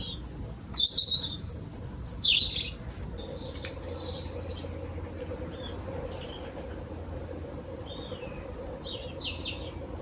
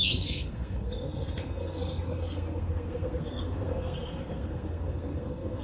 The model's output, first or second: second